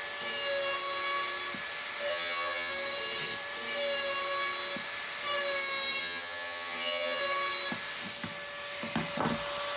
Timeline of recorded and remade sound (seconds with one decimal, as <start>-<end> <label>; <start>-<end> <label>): 0.0-2.1 recorded; 2.1-2.7 remade; 2.7-6.0 recorded; 6.0-7.2 remade; 7.2-9.8 recorded